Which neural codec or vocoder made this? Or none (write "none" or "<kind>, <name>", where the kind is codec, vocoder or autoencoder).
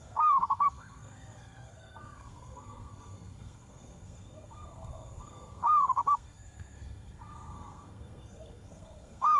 codec, SNAC